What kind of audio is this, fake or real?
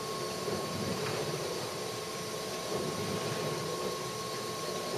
real